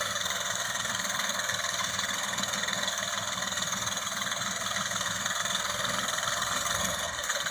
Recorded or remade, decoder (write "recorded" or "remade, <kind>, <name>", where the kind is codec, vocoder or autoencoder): remade, codec, SNAC